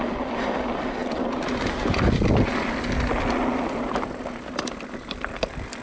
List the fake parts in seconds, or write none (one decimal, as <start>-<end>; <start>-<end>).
none